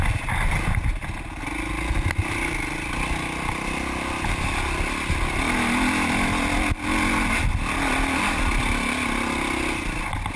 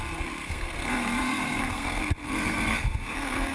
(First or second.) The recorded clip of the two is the first